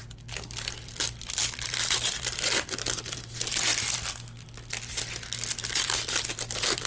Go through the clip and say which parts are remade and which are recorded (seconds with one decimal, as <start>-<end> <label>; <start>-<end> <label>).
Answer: 0.0-3.7 remade; 3.7-4.7 recorded; 4.7-6.9 remade